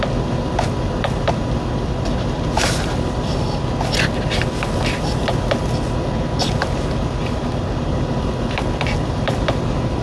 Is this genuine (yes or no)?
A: yes